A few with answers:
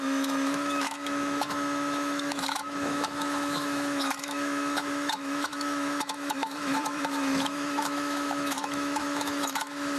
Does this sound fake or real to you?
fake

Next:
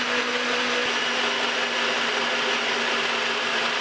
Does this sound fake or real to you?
real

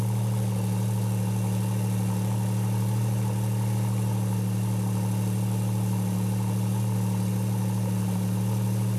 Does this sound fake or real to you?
real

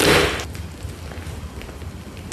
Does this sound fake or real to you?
real